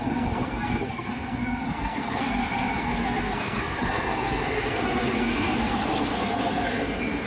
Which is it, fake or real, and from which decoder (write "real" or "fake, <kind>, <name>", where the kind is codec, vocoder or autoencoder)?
fake, codec, SNAC